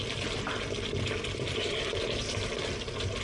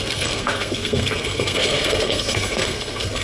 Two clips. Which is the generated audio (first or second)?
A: second